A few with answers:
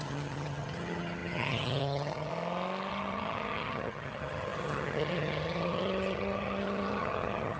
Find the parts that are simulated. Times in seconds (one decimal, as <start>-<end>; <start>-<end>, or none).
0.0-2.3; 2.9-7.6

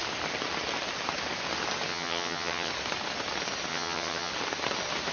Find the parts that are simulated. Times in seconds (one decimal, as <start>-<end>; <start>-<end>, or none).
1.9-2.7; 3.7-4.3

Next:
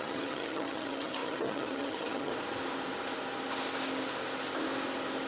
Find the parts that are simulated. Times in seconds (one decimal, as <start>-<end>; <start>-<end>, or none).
0.0-2.3

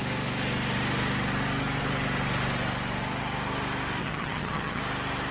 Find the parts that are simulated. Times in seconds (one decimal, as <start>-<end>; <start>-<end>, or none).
4.0-4.8

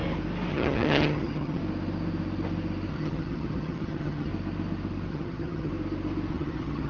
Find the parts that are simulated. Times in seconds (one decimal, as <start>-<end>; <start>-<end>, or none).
0.5-1.6; 2.9-4.3; 5.1-5.7; 6.3-6.9

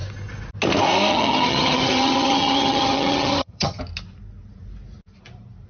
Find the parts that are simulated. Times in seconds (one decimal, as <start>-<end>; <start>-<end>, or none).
1.1-3.8

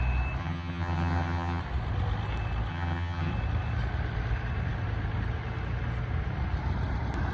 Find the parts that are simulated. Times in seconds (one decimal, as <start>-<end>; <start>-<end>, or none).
0.4-1.6; 2.7-3.3

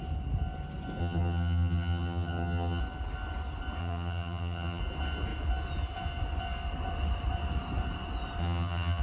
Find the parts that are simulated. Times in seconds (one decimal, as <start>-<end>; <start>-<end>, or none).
1.0-2.8; 3.8-4.8; 8.4-9.0